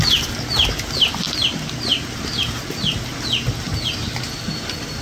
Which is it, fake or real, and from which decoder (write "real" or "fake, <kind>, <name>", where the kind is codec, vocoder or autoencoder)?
real